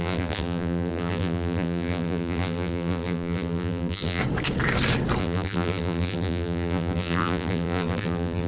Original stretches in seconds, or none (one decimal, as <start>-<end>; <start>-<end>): 4.2-5.2

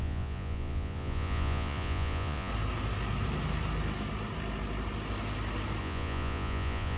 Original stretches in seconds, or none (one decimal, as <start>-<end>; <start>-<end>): 2.5-5.8

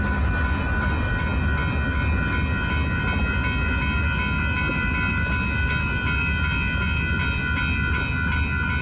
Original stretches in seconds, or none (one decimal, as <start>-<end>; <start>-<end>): 0.0-8.8

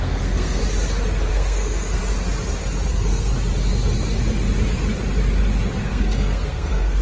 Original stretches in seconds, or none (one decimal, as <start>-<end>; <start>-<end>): 0.6-1.3; 2.0-2.9; 3.3-5.8

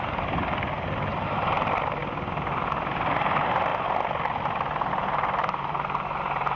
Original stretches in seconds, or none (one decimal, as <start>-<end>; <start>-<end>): 0.0-6.6

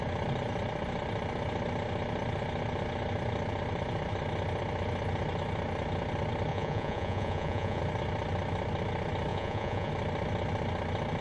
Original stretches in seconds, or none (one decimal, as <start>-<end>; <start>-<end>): 0.0-6.5; 7.8-9.3; 9.9-11.2

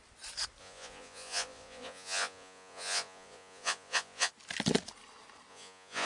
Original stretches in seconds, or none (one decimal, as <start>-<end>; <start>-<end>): 0.0-0.6; 4.3-5.5

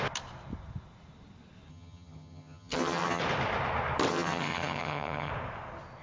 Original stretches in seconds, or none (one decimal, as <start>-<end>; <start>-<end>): 0.0-1.7; 3.2-4.1; 5.3-6.0